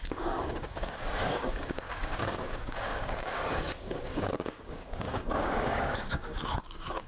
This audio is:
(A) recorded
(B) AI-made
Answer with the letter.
B